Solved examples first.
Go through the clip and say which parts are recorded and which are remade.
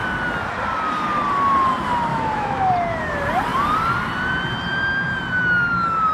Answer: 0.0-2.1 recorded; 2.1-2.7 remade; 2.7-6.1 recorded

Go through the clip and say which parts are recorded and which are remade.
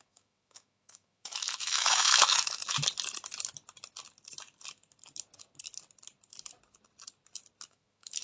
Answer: 0.0-2.8 remade; 2.8-7.7 recorded; 7.7-8.2 remade